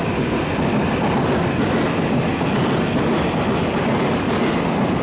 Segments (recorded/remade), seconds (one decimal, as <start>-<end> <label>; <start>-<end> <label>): 0.0-5.0 recorded